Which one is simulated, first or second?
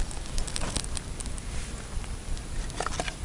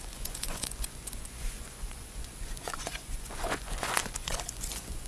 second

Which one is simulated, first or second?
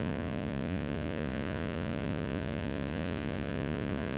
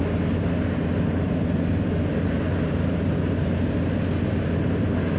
first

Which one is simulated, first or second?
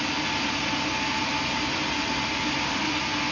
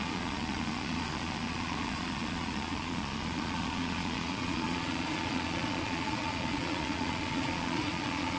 second